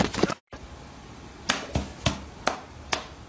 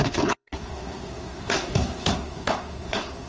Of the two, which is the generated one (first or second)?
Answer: second